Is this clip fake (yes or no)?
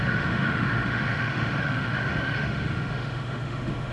yes